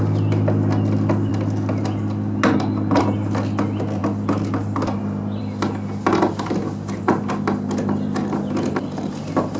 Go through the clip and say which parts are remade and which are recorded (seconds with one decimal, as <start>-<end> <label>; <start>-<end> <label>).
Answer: 0.0-9.6 recorded